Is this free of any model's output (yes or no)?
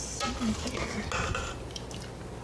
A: yes